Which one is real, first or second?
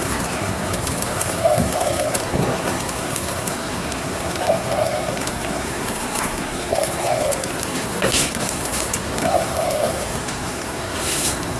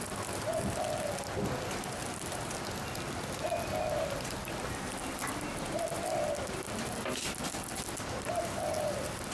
second